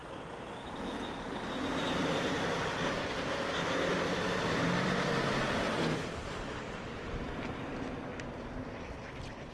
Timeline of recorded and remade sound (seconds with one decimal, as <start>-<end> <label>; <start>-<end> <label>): 0.0-3.1 remade; 3.1-3.9 recorded; 3.9-8.6 remade; 8.6-9.5 recorded